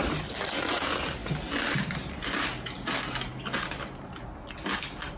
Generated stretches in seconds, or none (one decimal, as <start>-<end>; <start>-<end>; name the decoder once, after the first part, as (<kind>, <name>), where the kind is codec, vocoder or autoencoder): none